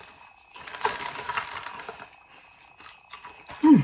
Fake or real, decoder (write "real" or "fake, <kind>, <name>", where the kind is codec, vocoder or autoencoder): real